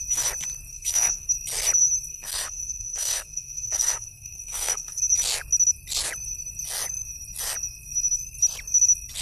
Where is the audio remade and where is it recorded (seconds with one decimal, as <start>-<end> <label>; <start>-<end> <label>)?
0.0-0.7 recorded; 0.7-1.3 remade; 1.3-2.1 recorded; 2.1-5.0 remade; 5.0-9.2 recorded